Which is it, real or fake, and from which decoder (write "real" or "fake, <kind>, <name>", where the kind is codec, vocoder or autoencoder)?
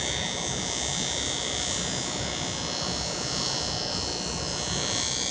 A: real